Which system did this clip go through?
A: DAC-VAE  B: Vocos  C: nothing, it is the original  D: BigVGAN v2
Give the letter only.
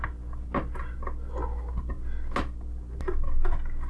C